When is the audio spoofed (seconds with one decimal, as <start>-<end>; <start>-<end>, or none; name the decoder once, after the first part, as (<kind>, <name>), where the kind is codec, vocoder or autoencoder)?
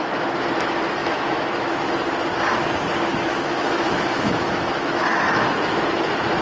1.0-1.9 (autoencoder, DAC-VAE); 3.1-5.6